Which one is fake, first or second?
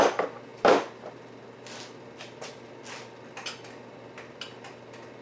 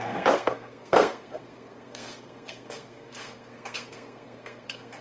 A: second